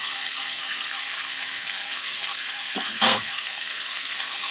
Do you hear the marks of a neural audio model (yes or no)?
yes